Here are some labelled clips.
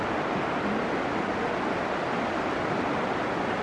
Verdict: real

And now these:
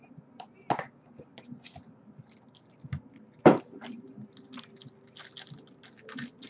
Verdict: real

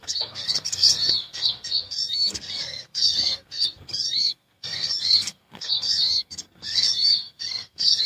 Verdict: fake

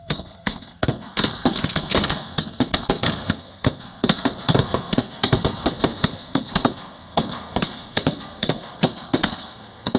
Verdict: fake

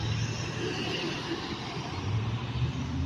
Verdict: real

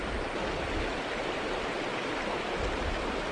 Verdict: real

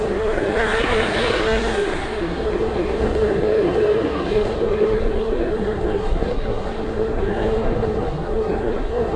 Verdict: fake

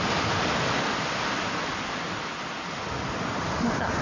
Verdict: real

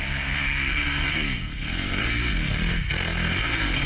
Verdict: fake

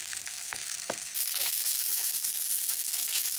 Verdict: fake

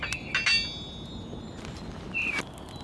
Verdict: real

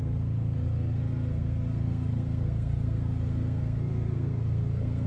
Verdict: fake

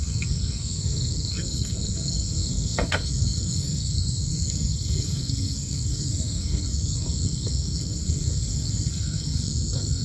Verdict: fake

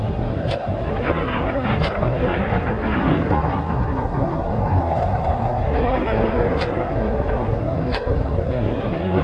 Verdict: fake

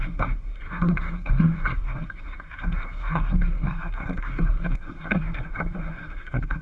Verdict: fake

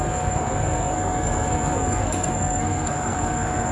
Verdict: fake